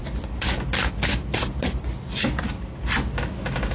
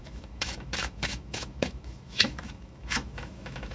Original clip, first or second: first